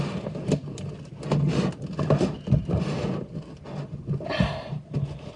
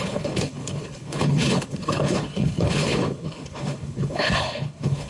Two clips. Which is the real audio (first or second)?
first